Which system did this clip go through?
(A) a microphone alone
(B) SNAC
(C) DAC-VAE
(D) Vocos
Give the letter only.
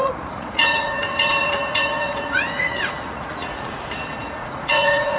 D